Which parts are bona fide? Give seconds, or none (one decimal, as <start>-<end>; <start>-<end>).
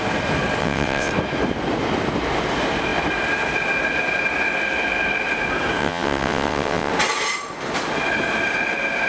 0.0-0.6; 1.1-5.8; 6.9-9.1